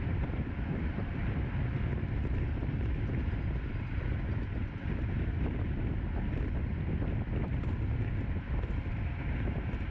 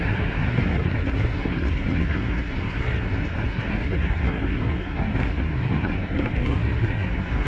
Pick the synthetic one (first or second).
second